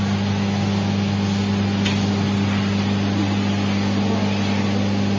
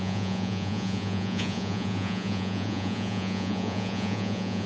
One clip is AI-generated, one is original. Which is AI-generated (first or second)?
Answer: second